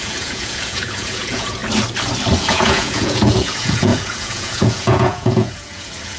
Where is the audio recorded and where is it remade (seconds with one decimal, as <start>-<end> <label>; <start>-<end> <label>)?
0.0-1.6 remade; 1.6-2.4 recorded; 2.4-6.2 remade